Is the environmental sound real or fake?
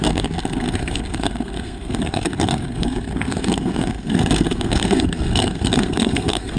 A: fake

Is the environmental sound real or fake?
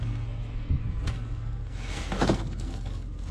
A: fake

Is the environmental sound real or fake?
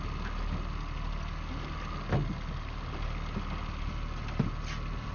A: real